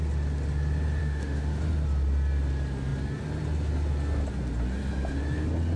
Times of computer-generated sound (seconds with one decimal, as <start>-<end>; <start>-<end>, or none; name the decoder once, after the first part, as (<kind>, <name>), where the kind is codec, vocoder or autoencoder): 1.0-1.6 (autoencoder, DAC-VAE)